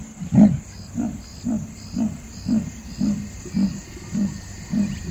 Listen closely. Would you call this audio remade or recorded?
recorded